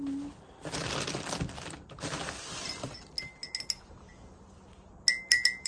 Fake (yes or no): no